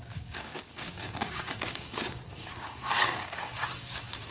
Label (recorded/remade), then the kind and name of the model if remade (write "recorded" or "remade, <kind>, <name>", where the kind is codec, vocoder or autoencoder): remade, codec, DAC